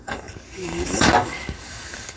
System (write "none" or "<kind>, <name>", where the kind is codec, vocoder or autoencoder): codec, DAC